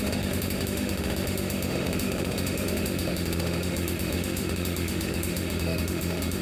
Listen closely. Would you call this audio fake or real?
fake